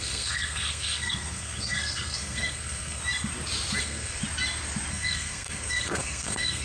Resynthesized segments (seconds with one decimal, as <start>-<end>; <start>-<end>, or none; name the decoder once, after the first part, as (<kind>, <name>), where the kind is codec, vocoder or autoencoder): 0.0-3.0 (codec, SNAC); 3.8-4.2; 4.9-6.6